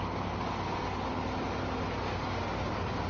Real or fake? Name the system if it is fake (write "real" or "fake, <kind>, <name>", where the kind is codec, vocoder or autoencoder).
real